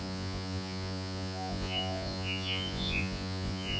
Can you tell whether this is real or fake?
fake